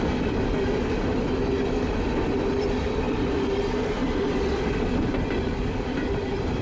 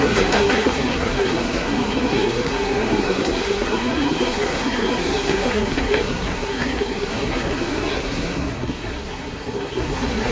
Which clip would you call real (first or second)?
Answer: first